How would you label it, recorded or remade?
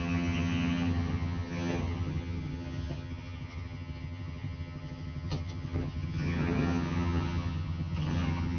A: remade